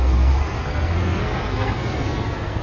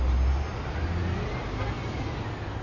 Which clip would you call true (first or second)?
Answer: second